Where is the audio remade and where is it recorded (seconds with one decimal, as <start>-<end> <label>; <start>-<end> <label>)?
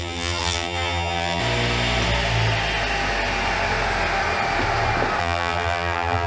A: 0.0-1.4 remade; 1.4-5.2 recorded; 5.2-6.3 remade